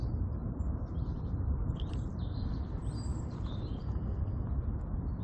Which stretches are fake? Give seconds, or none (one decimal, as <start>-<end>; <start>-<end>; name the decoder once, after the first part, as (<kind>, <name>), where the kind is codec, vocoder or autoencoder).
0.4-2.4 (vocoder, BigVGAN v2)